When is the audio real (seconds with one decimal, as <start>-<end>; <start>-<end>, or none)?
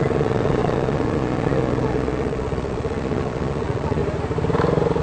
4.0-5.0